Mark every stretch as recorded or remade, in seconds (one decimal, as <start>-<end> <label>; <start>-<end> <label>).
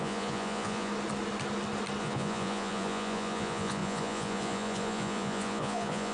0.0-0.9 remade; 0.9-2.0 recorded; 2.0-6.1 remade